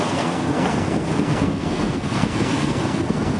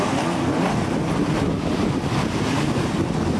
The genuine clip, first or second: second